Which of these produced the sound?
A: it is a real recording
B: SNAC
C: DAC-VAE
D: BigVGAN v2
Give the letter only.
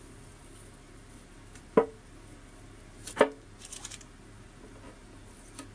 A